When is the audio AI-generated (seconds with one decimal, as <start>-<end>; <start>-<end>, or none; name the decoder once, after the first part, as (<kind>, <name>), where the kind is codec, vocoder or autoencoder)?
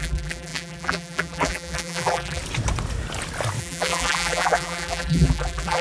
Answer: 0.0-2.4 (vocoder, BigVGAN v2); 3.6-5.8